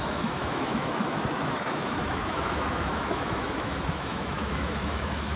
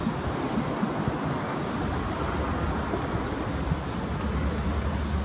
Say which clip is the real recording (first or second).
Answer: second